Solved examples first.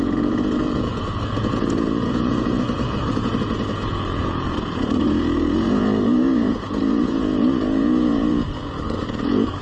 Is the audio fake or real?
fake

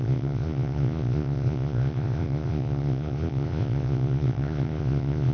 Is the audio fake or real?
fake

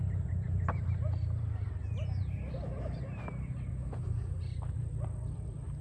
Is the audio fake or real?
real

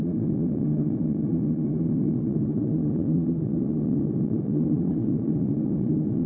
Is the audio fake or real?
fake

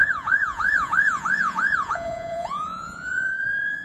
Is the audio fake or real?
fake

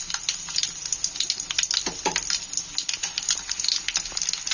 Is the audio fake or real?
real